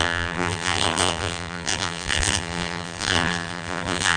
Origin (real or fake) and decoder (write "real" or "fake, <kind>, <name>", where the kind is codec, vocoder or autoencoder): fake, vocoder, BigVGAN v2